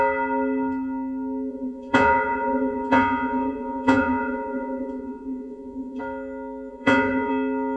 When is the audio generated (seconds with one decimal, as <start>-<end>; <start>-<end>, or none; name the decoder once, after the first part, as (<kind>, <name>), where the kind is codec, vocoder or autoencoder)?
1.5-6.0 (vocoder, Vocos); 6.7-7.3